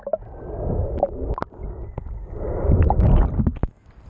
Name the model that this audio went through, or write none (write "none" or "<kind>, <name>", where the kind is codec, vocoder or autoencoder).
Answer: none